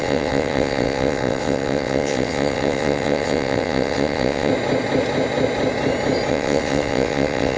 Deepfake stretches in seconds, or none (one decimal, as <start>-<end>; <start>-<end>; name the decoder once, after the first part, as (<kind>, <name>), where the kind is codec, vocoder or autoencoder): 0.0-4.5 (vocoder, WaveNeXt); 6.3-7.6